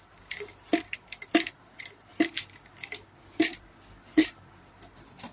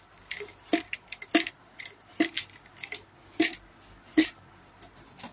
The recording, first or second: second